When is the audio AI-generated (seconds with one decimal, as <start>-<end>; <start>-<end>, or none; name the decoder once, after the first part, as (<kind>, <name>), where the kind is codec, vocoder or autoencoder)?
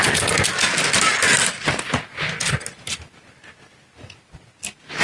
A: none